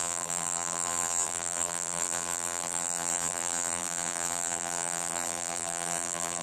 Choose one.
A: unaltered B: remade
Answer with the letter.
B